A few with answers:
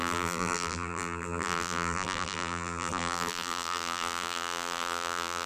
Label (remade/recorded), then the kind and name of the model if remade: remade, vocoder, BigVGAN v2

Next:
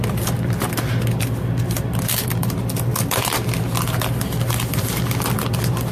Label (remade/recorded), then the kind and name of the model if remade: recorded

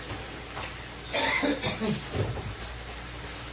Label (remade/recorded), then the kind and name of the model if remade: recorded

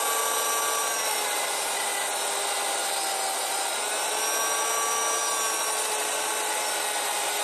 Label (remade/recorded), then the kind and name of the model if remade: recorded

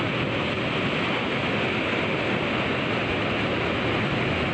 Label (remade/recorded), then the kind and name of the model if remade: recorded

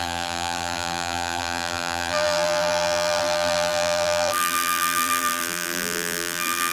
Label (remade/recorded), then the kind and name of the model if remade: remade, vocoder, BigVGAN v2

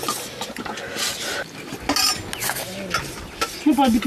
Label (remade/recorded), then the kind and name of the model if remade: recorded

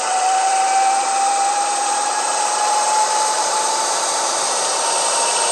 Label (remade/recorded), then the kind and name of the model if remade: remade, vocoder, BigVGAN v2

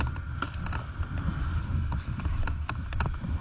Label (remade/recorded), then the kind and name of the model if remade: remade, vocoder, BigVGAN v2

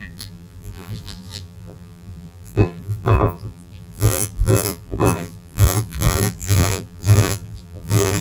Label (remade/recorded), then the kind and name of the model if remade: remade, vocoder, BigVGAN v2